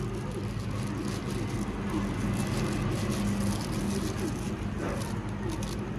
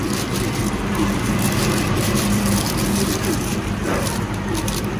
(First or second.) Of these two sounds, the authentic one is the first